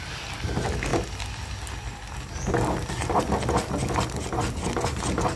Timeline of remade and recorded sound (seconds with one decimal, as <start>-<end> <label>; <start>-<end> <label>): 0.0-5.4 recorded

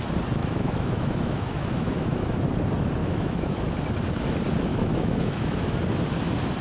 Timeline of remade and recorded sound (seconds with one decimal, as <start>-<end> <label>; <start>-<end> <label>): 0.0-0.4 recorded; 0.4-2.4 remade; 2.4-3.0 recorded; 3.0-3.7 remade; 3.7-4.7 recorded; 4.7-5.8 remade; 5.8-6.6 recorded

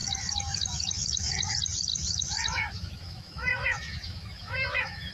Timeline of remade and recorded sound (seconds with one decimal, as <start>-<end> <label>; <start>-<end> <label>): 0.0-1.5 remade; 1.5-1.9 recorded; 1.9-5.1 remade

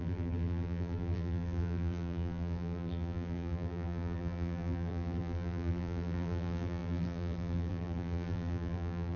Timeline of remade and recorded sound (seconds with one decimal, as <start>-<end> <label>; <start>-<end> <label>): 0.0-9.2 remade

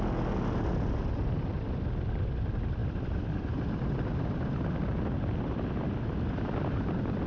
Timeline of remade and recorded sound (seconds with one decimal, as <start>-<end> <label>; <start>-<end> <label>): 0.0-7.3 recorded

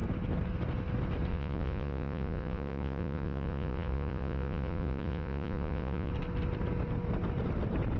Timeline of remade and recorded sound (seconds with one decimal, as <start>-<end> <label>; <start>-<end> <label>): 0.0-1.3 recorded; 1.3-6.1 remade; 6.1-8.0 recorded